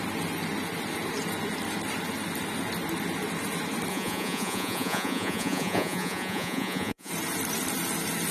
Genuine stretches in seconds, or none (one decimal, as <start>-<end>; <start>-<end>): 0.0-3.9; 7.1-8.3